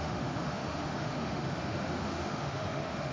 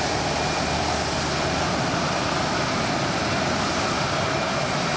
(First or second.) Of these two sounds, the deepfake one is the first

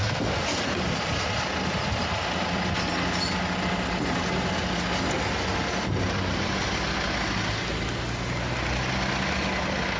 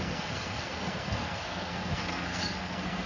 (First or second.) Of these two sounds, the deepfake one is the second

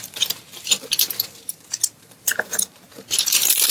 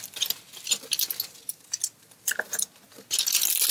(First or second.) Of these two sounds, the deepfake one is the first